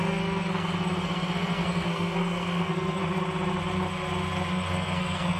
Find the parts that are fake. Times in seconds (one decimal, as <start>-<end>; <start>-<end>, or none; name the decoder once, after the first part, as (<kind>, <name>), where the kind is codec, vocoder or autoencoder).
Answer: 0.0-3.0 (codec, SNAC); 4.5-5.4